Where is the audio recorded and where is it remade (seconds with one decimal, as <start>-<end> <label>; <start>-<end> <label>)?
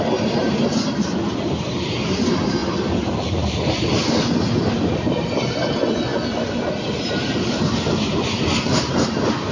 0.0-9.5 recorded